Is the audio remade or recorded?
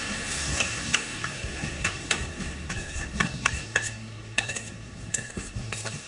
remade